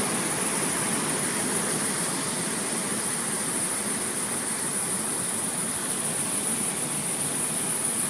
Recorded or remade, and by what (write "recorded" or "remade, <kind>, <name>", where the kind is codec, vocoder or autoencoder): recorded